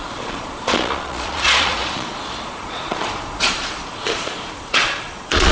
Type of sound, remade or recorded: remade